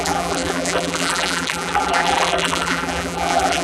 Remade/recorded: remade